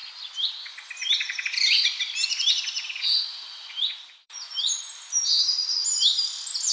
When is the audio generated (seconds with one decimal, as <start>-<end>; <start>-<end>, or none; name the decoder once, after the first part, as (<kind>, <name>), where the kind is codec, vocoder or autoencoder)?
0.0-6.7 (vocoder, BigVGAN v2)